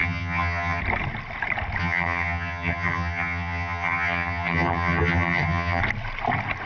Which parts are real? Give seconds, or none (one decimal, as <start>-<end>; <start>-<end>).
0.8-1.8; 5.8-6.7